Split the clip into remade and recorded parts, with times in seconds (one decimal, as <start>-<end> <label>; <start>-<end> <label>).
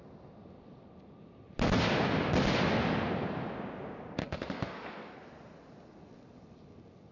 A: 0.0-4.2 recorded; 4.2-5.2 remade; 5.2-7.1 recorded